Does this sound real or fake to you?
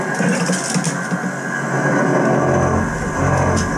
real